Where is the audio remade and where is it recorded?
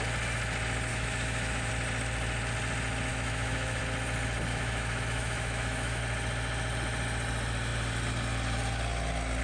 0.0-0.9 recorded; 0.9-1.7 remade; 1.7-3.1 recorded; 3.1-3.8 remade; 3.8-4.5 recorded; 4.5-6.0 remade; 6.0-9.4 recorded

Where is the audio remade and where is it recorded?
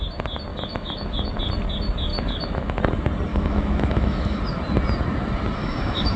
0.0-0.5 recorded; 0.5-1.3 remade; 1.3-2.1 recorded; 2.1-2.8 remade; 2.8-3.3 recorded; 3.3-4.4 remade; 4.4-5.6 recorded; 5.6-6.2 remade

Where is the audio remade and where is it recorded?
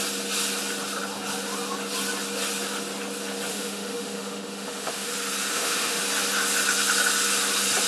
0.0-3.5 recorded; 3.5-5.1 remade; 5.1-5.5 recorded; 5.5-6.0 remade; 6.0-7.9 recorded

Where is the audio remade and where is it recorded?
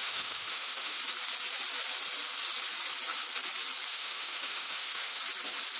0.0-1.0 remade; 1.0-3.9 recorded; 3.9-5.2 remade; 5.2-5.8 recorded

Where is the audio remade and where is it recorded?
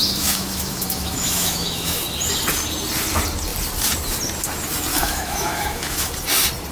0.0-2.0 remade; 2.0-4.9 recorded; 4.9-6.1 remade; 6.1-6.7 recorded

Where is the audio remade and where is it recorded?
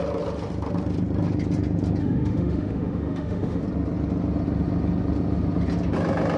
0.0-2.0 recorded; 2.0-3.6 remade; 3.6-6.4 recorded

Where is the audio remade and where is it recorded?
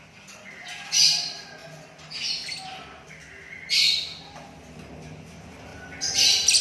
0.0-6.6 recorded